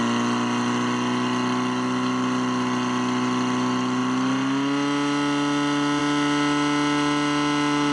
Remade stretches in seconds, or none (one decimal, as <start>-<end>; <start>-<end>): none